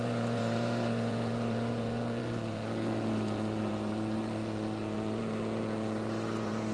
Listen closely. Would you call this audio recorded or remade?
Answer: remade